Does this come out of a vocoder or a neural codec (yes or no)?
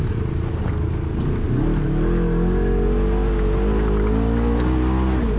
no